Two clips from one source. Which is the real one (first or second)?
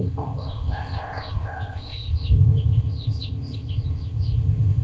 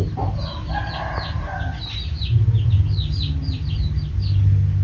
second